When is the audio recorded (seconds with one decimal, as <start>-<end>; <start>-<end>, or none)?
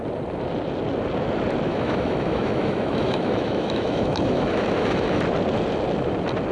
0.0-1.7; 5.2-6.5